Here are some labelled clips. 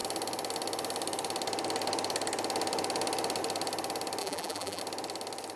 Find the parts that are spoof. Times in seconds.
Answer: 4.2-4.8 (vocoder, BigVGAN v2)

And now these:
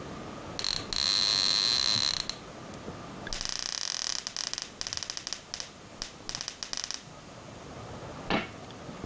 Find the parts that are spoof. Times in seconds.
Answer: none

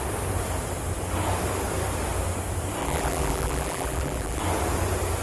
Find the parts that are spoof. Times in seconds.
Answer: 2.8-4.4 (vocoder, BigVGAN v2)

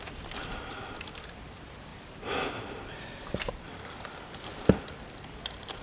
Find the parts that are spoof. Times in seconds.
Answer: 0.0-1.9 (vocoder, BigVGAN v2); 3.5-5.8

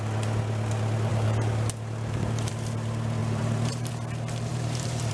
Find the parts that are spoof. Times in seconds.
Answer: 1.1-2.5 (vocoder, BigVGAN v2); 3.2-3.9; 4.5-5.1

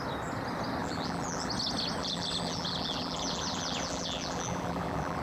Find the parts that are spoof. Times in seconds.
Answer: 0.8-1.5 (vocoder, BigVGAN v2); 2.0-5.2